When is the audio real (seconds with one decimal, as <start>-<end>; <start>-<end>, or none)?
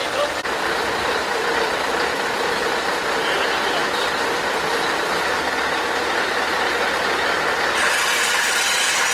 none